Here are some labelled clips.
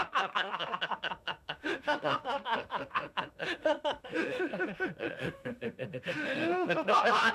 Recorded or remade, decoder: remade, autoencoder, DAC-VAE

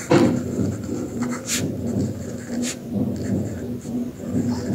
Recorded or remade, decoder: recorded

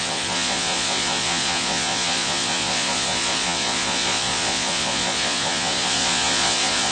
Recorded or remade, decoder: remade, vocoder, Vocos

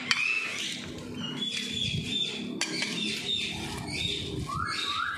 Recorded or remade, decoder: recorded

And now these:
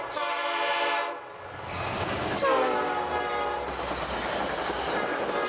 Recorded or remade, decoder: recorded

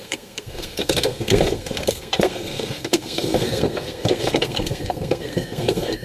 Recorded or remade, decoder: remade, codec, SNAC